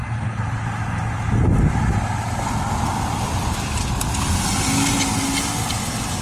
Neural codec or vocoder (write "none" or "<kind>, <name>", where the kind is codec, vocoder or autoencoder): none